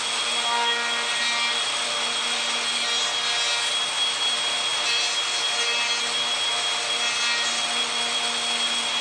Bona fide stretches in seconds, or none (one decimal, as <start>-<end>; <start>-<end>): 0.0-9.0